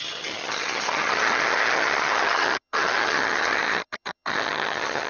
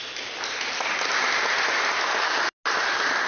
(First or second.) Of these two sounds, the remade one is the first